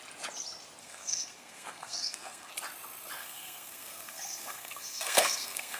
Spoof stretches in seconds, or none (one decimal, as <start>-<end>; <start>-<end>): 0.8-2.5; 3.2-5.8